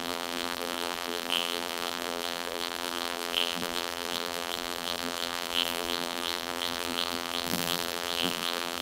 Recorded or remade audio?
remade